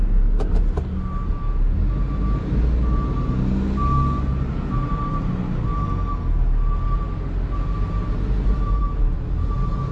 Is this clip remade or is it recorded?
recorded